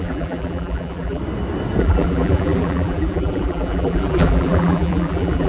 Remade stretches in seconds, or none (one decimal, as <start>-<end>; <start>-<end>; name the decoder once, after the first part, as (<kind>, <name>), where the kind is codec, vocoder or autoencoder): 0.0-1.2 (vocoder, BigVGAN v2); 1.8-5.5